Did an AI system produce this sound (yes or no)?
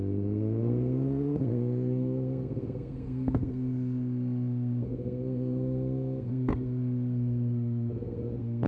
yes